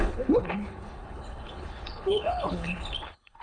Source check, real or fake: fake